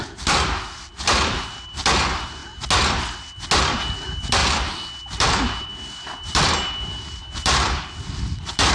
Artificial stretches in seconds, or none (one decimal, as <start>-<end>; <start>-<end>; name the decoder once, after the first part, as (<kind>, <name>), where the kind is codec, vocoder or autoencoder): 0.0-2.4 (vocoder, BigVGAN v2); 3.6-4.4; 5.0-8.7